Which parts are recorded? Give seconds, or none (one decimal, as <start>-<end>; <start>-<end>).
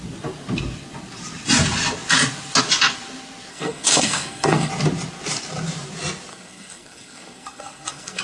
0.0-3.5; 4.7-6.3